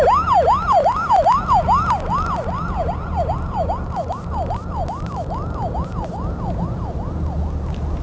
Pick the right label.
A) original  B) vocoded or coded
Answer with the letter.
A